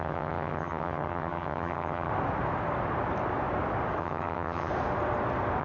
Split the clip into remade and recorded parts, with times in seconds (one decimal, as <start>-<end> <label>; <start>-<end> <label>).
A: 0.0-2.1 remade; 2.1-4.0 recorded; 4.0-4.7 remade; 4.7-5.6 recorded